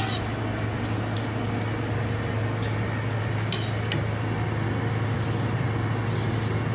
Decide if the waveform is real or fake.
real